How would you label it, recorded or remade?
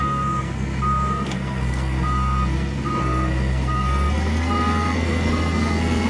remade